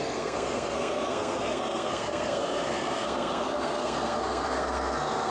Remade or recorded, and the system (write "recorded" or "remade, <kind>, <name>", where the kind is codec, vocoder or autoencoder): remade, codec, SNAC